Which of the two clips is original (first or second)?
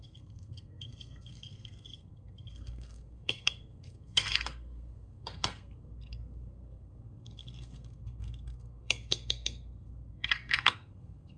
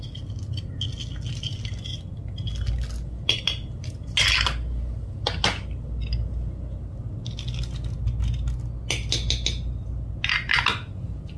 second